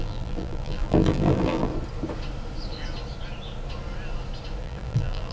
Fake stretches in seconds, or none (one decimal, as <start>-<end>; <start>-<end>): 0.0-1.7; 4.6-5.3